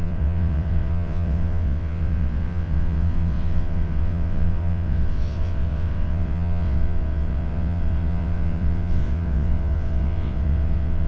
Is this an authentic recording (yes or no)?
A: no